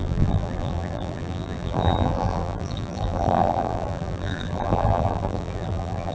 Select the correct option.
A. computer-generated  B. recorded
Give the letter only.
A